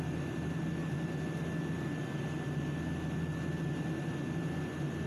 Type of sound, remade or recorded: recorded